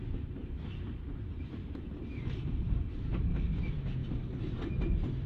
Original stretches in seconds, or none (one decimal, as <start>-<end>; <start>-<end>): 0.0-0.4; 3.6-5.3